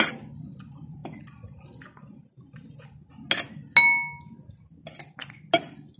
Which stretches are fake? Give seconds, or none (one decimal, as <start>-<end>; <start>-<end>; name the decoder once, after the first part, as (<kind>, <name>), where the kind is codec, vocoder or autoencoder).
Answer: none